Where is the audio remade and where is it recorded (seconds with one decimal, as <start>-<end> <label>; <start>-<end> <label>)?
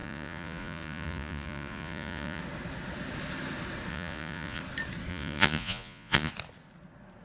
0.0-2.4 remade; 2.4-3.9 recorded; 3.9-4.6 remade; 4.6-5.1 recorded; 5.1-6.3 remade; 6.3-7.2 recorded